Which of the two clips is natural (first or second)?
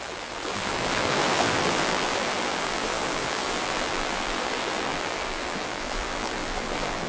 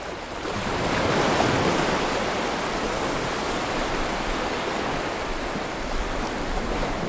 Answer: second